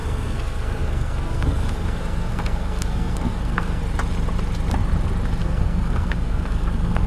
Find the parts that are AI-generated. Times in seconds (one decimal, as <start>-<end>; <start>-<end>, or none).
0.0-3.8; 5.4-7.1